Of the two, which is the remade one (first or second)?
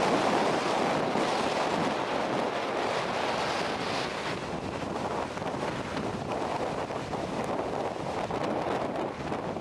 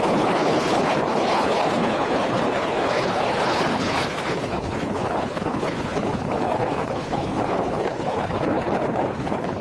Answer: second